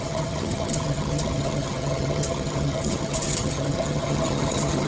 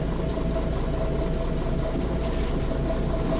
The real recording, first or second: second